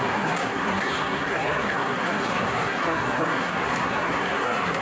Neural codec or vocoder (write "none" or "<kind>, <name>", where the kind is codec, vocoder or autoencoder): codec, SNAC